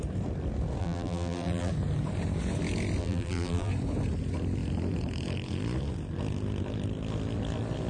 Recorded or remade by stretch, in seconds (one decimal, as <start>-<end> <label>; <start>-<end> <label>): 0.0-0.8 recorded; 0.8-1.7 remade; 1.7-3.0 recorded; 3.0-3.7 remade; 3.7-7.9 recorded